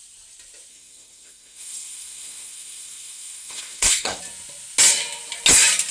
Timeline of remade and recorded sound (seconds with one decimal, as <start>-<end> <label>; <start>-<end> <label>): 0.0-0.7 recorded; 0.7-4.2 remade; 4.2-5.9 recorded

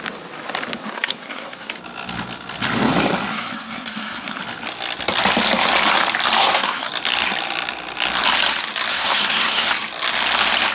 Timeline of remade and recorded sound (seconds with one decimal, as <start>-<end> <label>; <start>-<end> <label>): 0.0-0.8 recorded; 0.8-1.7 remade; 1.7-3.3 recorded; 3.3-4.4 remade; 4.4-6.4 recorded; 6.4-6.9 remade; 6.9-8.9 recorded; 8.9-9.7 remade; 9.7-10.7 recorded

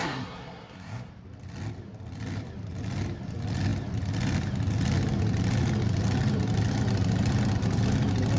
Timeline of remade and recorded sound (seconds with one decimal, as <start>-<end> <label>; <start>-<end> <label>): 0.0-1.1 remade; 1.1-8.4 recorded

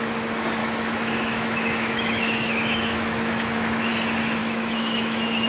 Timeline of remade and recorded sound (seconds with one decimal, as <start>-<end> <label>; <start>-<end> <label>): 0.0-0.6 recorded; 0.6-3.9 remade; 3.9-4.4 recorded; 4.4-5.5 remade

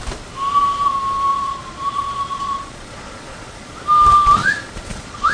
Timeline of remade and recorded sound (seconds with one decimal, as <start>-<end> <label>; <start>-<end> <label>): 0.0-1.3 recorded; 1.3-3.7 remade; 3.7-4.4 recorded; 4.4-5.3 remade

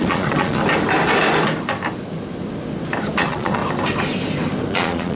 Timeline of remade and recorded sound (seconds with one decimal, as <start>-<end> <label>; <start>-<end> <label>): 0.0-0.6 remade; 0.6-3.2 recorded; 3.2-3.6 remade; 3.6-4.7 recorded; 4.7-5.2 remade

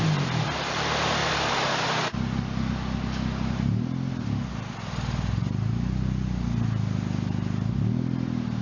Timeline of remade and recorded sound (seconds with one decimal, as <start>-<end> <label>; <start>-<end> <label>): 0.0-1.2 recorded; 1.2-1.8 remade; 1.8-8.6 recorded

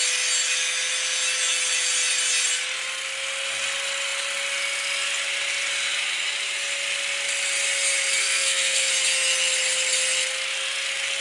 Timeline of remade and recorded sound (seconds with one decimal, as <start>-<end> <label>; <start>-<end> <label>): 0.0-8.2 recorded; 8.2-8.9 remade; 8.9-11.2 recorded